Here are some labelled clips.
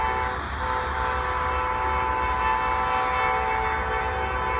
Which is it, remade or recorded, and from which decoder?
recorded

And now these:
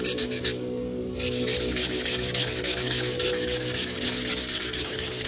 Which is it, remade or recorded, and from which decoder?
remade, codec, DAC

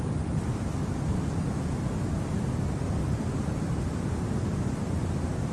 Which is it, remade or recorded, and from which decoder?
recorded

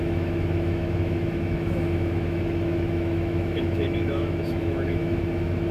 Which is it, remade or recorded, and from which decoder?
remade, autoencoder, DAC-VAE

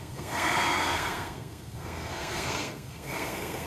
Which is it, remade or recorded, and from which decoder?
remade, codec, SNAC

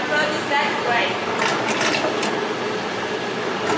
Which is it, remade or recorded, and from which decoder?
recorded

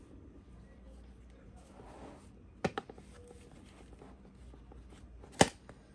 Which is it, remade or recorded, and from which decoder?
recorded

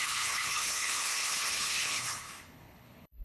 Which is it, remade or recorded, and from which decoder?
remade, codec, HILCodec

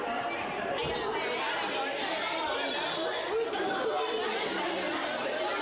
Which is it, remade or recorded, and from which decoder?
recorded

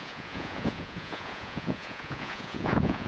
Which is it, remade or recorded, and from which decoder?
remade, vocoder, Vocos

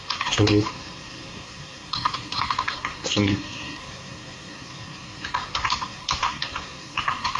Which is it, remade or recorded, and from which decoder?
remade, codec, SNAC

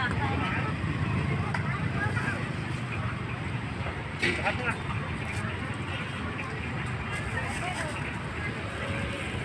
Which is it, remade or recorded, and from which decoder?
recorded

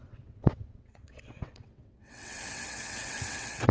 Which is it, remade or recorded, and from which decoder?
remade, vocoder, WaveNeXt